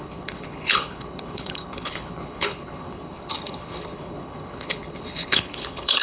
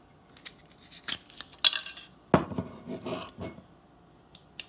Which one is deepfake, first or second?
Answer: first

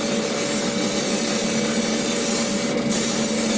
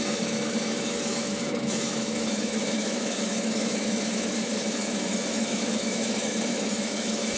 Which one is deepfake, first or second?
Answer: second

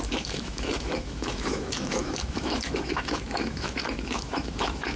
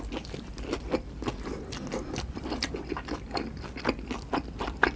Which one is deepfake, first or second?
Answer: first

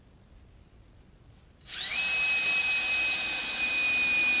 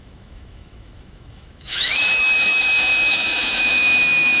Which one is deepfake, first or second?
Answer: second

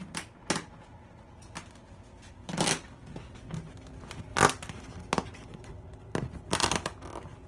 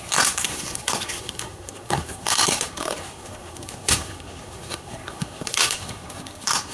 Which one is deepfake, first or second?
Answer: second